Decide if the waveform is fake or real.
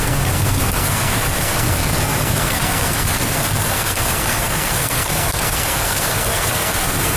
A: fake